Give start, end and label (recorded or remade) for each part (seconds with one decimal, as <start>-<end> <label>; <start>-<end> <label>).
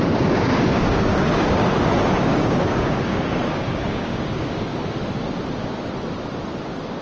0.0-1.6 remade; 1.6-2.2 recorded; 2.2-4.7 remade; 4.7-7.0 recorded